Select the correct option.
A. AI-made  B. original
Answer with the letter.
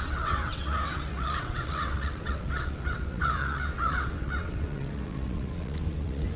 A